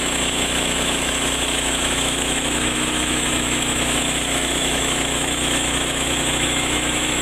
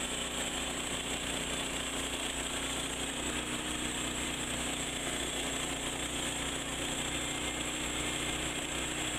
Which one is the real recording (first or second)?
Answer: second